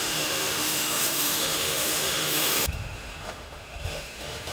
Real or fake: fake